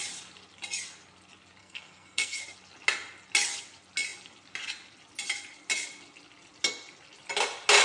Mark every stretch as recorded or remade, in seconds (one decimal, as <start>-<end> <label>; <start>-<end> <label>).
0.0-1.6 recorded; 1.6-2.4 remade; 2.4-7.8 recorded